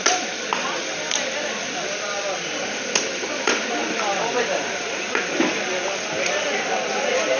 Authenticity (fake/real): real